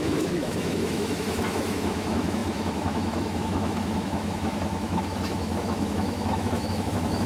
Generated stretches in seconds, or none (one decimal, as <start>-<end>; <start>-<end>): 0.0-7.3